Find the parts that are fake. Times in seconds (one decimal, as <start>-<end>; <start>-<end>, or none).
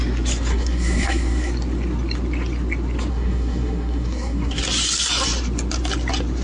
0.5-1.5; 3.1-4.6